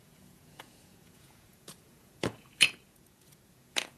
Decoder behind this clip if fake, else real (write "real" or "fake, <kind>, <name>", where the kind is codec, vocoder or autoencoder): fake, vocoder, Vocos